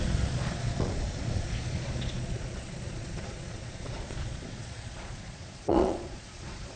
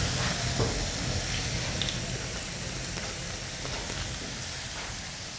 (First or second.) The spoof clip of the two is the first